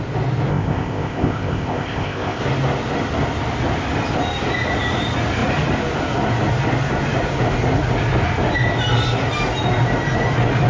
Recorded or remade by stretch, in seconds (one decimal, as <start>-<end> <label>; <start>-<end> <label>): 0.0-0.5 recorded; 0.5-2.4 remade; 2.4-10.7 recorded